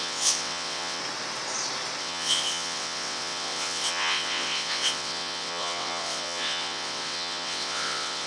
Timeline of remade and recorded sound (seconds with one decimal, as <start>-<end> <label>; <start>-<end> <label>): 0.0-1.0 remade; 1.0-2.0 recorded; 2.0-8.3 remade